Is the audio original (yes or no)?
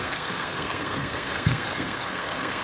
no